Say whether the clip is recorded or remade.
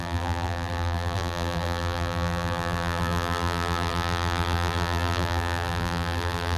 remade